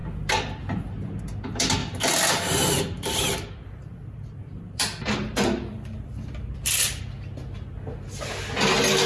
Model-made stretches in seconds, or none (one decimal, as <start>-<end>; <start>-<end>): 1.8-7.0